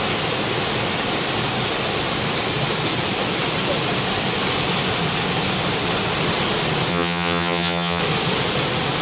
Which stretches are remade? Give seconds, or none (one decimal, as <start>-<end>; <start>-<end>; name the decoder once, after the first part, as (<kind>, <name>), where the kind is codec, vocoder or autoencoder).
6.9-8.0 (vocoder, HiFi-GAN)